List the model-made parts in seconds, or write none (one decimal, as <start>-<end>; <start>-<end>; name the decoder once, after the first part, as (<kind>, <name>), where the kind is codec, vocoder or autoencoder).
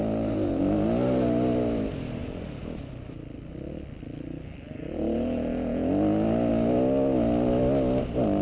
none